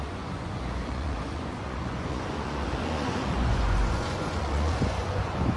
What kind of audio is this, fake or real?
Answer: fake